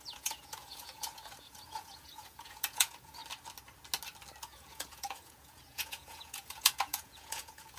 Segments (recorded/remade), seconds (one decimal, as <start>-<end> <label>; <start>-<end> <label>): 0.0-3.2 remade; 3.2-4.4 recorded; 4.4-7.8 remade